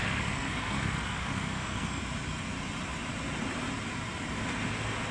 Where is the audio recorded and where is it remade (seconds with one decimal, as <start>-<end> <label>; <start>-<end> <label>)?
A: 0.0-2.0 remade; 2.0-5.1 recorded